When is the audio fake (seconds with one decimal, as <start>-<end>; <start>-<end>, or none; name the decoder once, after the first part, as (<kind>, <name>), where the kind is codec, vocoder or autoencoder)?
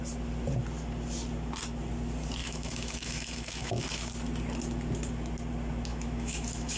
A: 2.4-4.1 (autoencoder, DAC-VAE); 5.9-6.8